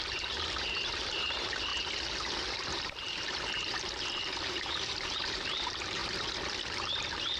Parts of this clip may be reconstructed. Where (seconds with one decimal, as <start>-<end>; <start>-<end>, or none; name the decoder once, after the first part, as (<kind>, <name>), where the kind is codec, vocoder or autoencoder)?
0.0-1.7 (vocoder, BigVGAN v2); 2.7-6.0; 7.0-7.4